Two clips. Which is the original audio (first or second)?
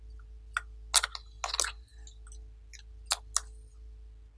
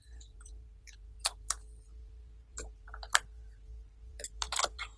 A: first